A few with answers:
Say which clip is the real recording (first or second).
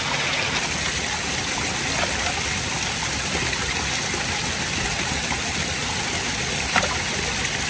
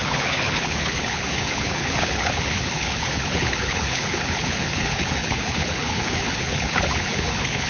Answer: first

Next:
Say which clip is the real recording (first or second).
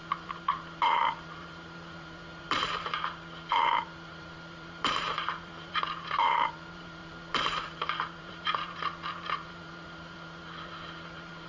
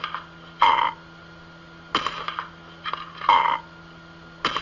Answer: second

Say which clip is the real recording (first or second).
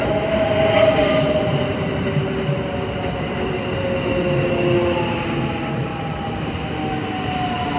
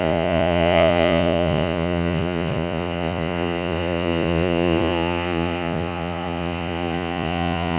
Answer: first